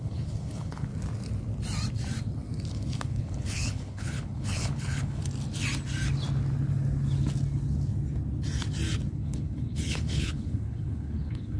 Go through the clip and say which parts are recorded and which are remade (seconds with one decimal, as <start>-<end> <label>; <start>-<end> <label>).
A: 0.0-0.9 remade; 0.9-2.7 recorded; 2.7-5.2 remade; 5.2-9.1 recorded; 9.1-11.6 remade